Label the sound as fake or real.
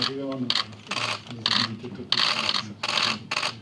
real